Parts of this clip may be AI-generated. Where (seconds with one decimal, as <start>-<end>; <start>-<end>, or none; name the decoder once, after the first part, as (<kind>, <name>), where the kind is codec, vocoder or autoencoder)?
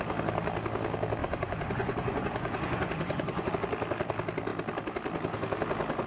1.2-3.5 (vocoder, Vocos)